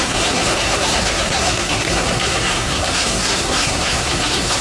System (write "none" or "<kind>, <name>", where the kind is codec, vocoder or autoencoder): codec, SNAC